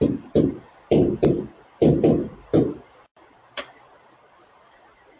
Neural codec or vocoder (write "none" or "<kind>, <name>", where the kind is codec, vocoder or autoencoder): vocoder, BigVGAN v2